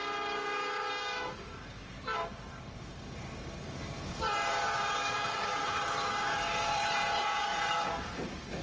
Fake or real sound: fake